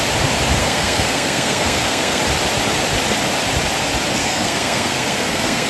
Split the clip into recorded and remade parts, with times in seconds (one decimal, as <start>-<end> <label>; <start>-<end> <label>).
0.0-0.6 recorded; 0.6-2.2 remade; 2.2-4.2 recorded; 4.2-5.7 remade